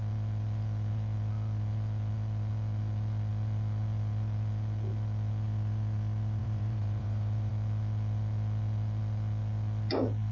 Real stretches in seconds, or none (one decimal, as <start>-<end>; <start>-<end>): 0.0-6.4; 7.5-10.3